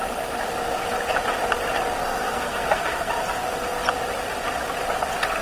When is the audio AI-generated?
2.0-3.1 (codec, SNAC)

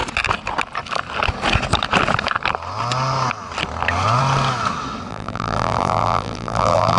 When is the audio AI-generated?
5.1-7.0 (vocoder, BigVGAN v2)